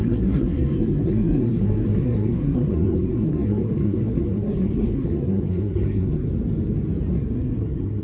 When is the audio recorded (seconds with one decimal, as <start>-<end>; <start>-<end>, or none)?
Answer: 6.3-7.1